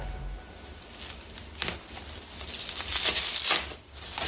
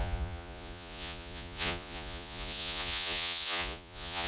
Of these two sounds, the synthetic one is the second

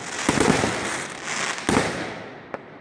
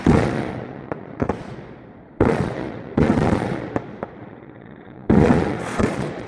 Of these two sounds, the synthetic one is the second